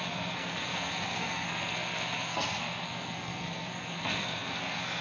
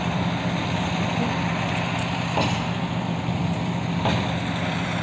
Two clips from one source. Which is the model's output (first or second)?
first